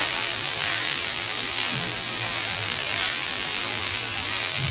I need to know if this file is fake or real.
fake